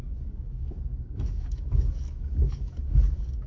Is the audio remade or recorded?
remade